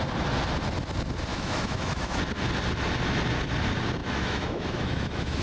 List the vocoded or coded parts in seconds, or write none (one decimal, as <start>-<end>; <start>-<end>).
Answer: 1.3-2.2; 4.0-5.4